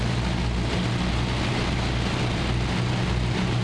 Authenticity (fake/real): real